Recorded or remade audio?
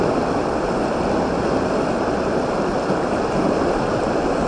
recorded